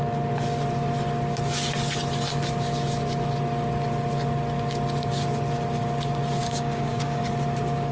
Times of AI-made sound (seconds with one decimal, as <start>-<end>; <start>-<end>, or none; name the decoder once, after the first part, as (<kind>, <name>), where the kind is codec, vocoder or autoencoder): 6.4-7.2 (codec, DAC)